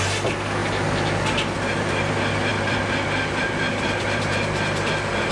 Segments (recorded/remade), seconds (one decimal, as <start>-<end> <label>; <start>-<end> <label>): 0.0-2.5 recorded; 2.5-5.3 remade